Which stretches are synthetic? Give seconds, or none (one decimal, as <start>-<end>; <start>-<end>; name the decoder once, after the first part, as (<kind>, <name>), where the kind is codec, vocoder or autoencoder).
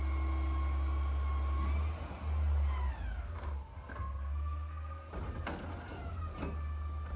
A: 3.2-5.1 (codec, SNAC)